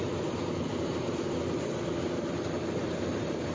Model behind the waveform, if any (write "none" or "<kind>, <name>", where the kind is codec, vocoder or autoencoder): vocoder, BigVGAN v2